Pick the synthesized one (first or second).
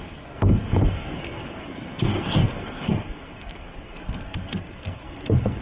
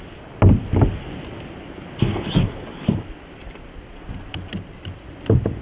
first